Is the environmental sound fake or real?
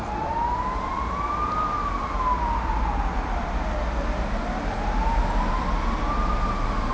real